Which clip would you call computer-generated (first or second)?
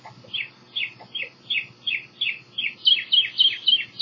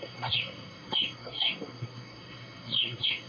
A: second